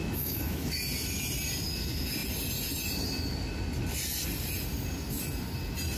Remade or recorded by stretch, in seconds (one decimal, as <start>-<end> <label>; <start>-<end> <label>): 0.0-0.8 remade; 0.8-6.0 recorded